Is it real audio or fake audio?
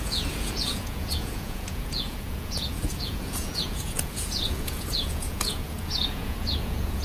fake